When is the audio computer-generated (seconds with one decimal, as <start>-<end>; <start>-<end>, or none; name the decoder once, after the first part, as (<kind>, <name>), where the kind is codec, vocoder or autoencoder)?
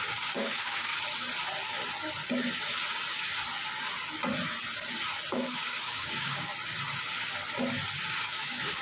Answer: 0.0-0.9 (codec, DAC); 5.3-6.5; 8.2-8.8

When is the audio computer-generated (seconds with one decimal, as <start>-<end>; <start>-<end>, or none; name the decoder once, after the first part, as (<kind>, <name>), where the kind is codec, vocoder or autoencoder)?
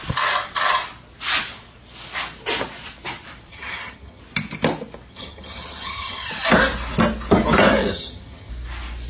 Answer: 3.5-4.2 (vocoder, HiFi-GAN); 5.1-6.3; 7.8-8.5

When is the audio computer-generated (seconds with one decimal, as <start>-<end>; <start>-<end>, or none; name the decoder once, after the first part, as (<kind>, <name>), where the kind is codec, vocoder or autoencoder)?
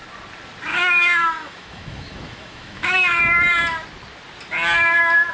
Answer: 0.7-3.2 (autoencoder, DAC-VAE)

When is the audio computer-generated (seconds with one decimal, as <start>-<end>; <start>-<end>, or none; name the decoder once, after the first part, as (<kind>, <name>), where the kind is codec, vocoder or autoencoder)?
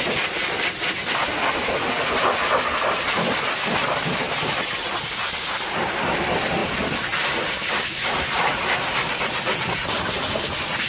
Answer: 0.0-1.0 (vocoder, BigVGAN v2); 5.1-6.6; 7.7-10.9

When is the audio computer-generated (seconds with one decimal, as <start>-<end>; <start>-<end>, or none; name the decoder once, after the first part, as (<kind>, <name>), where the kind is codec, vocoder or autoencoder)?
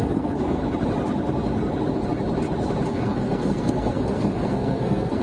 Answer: 0.0-0.6 (codec, SNAC); 2.9-5.2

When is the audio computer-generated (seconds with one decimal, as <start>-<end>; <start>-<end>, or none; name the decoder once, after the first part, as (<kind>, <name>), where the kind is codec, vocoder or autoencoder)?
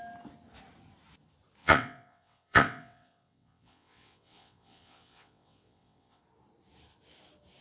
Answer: 1.6-6.2 (vocoder, WaveNeXt)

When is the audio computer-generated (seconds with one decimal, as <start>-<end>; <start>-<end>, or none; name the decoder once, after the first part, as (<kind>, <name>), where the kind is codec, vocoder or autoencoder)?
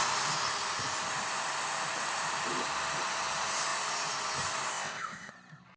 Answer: 4.7-5.3 (codec, ZipCodec)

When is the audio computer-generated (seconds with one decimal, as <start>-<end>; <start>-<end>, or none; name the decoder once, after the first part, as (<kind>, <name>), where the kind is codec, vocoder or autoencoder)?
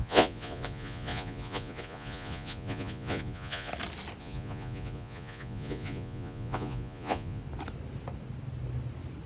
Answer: 0.0-3.7 (vocoder, Vocos); 4.2-7.4